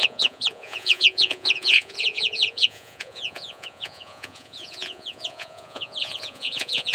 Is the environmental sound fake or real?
fake